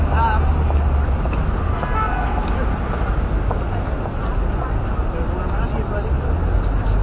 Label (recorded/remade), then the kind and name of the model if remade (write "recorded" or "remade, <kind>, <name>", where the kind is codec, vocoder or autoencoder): recorded